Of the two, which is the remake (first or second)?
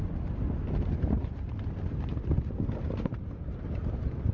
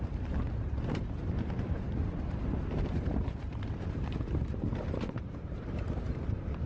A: second